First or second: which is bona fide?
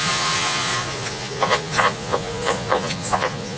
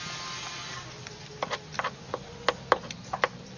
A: second